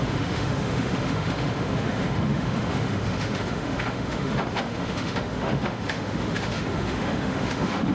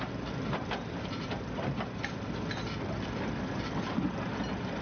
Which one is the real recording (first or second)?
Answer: second